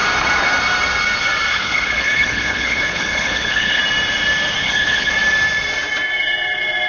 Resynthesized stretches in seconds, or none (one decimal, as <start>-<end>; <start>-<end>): 1.5-3.8; 4.6-5.1